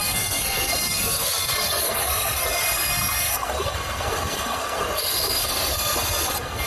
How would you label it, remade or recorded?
remade